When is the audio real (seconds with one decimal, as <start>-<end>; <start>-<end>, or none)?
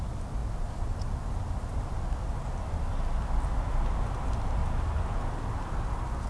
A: 0.0-0.4; 1.3-4.6; 5.2-6.3